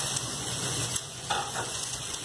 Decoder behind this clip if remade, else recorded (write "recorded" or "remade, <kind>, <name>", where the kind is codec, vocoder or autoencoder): remade, vocoder, Vocos